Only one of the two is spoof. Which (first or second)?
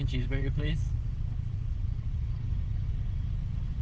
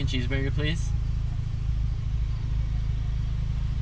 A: first